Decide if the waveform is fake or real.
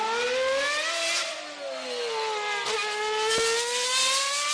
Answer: real